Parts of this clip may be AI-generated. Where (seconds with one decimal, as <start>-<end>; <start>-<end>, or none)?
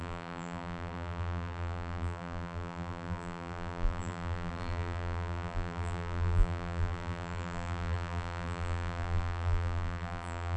0.0-10.6